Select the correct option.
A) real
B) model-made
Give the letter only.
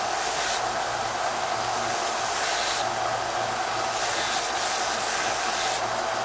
A